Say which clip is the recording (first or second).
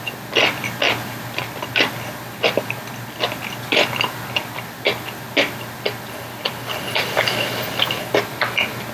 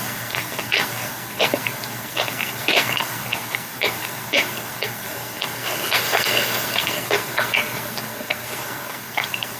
first